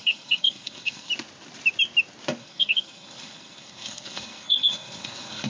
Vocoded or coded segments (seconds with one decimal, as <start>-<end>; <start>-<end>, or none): 0.0-1.1; 2.4-5.5